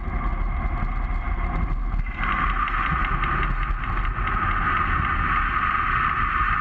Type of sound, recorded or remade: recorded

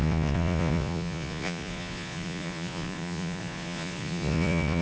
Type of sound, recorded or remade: remade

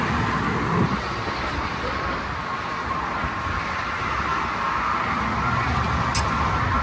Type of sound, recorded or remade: recorded